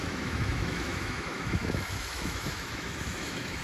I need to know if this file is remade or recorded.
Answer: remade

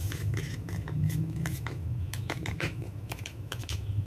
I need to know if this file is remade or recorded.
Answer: remade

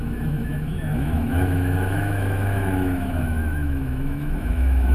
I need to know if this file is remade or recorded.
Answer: remade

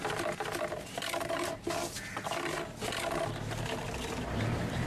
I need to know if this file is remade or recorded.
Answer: recorded